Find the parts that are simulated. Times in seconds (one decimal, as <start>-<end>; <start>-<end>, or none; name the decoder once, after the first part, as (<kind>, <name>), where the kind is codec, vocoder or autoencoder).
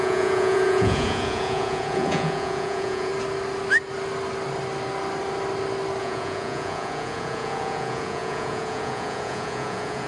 0.0-3.1 (vocoder, Vocos); 6.0-10.1